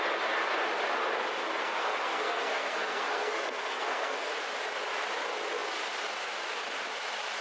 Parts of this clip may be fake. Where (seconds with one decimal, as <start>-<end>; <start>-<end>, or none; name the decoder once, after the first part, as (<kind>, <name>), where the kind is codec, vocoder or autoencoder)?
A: 1.6-4.3 (codec, SNAC)